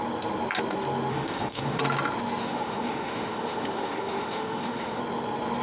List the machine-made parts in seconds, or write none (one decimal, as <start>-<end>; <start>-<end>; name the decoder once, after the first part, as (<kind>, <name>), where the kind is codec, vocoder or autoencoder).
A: 1.1-1.8 (autoencoder, DAC-VAE); 2.4-5.0